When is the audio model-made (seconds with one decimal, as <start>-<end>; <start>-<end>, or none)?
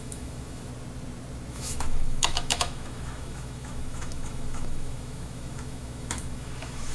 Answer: 0.0-0.7; 1.5-6.9